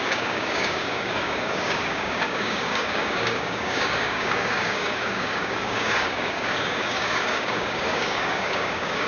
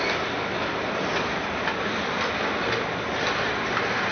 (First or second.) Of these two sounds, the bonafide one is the second